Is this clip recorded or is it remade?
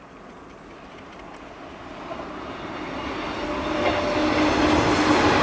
recorded